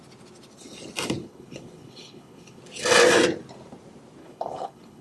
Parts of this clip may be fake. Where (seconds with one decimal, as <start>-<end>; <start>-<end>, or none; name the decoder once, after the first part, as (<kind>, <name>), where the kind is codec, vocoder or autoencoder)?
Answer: 1.2-2.6 (codec, HILCodec); 4.2-5.0